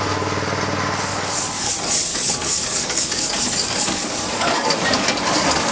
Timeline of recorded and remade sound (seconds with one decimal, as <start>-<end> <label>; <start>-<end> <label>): 0.0-1.1 recorded; 1.1-1.7 remade; 1.7-2.1 recorded; 2.1-5.7 remade